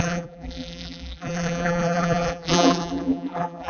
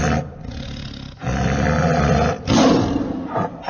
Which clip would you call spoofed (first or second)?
first